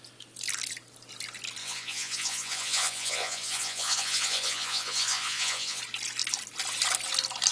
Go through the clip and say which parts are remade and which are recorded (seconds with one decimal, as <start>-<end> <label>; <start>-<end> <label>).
0.0-1.6 recorded; 1.6-5.8 remade; 5.8-7.5 recorded